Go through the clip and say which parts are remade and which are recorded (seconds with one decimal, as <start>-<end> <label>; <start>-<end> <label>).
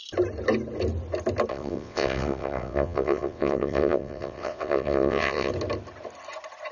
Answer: 0.0-1.5 recorded; 1.5-5.5 remade; 5.5-6.7 recorded